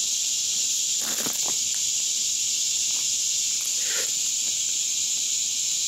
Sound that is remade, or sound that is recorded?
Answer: recorded